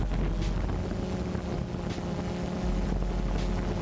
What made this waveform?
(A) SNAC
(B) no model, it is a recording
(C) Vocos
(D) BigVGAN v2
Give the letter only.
B